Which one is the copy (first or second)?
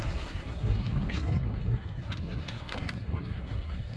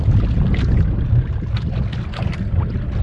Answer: first